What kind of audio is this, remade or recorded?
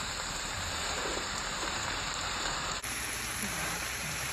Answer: remade